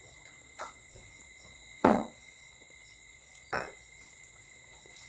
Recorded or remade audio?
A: remade